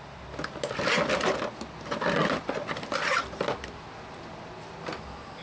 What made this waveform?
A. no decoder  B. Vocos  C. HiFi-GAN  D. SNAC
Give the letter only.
A